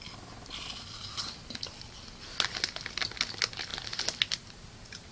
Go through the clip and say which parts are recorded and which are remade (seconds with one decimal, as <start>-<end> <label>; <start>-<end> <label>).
0.0-5.1 recorded

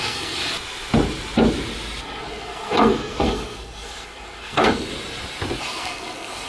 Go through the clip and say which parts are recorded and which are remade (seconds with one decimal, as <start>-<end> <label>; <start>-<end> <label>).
0.0-0.4 remade; 0.4-2.0 recorded; 2.0-4.9 remade; 4.9-5.6 recorded; 5.6-6.5 remade

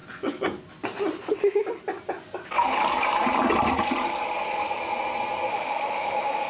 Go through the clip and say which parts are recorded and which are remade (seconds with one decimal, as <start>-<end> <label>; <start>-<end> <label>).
0.0-5.5 recorded; 5.5-6.5 remade

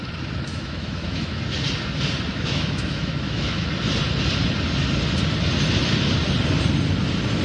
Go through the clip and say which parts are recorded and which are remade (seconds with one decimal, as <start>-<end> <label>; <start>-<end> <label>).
0.0-0.5 recorded; 0.5-1.4 remade; 1.4-2.3 recorded; 2.3-3.7 remade; 3.7-7.4 recorded